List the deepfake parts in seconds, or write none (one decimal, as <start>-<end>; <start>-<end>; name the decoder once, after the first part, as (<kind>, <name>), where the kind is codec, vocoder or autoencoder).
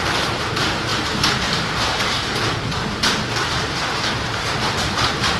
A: none